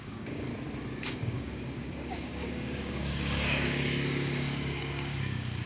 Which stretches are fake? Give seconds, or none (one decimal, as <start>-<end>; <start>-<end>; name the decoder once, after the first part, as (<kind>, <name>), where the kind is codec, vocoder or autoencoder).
0.0-0.5 (codec, DAC); 1.0-5.7